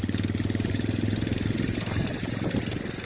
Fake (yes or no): no